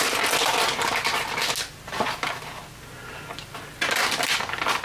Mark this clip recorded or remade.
recorded